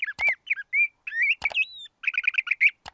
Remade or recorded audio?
recorded